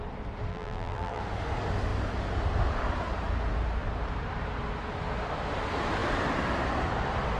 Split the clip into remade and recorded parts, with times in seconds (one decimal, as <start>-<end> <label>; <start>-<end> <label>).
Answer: 0.0-0.5 recorded; 0.5-1.2 remade; 1.2-7.4 recorded